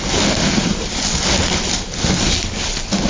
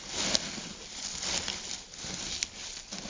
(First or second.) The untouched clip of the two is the first